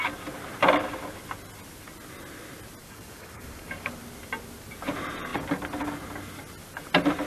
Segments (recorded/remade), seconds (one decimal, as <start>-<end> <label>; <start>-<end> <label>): 0.0-2.8 recorded; 2.8-3.9 remade; 3.9-7.3 recorded